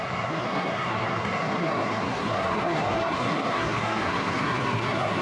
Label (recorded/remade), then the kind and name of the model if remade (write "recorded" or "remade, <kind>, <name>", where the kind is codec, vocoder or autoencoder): remade, codec, SNAC